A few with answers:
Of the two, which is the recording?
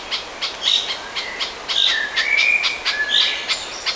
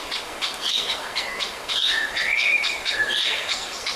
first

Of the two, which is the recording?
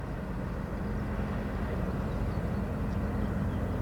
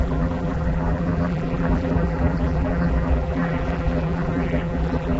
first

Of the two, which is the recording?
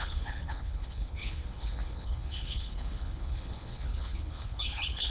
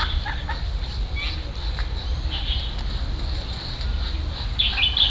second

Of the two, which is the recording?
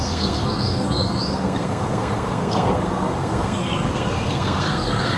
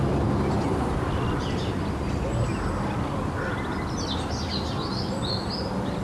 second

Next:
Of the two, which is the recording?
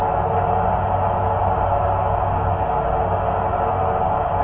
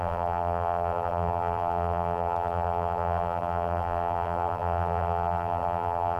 first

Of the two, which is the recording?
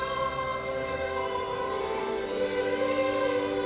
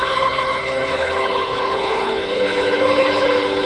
first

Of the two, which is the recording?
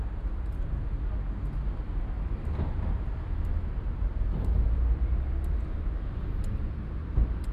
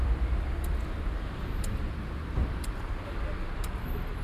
first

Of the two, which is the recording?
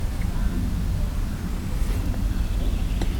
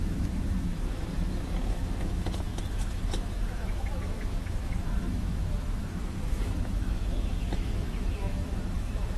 first